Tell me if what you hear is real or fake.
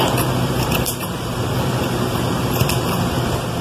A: fake